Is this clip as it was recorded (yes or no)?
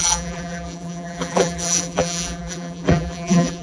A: no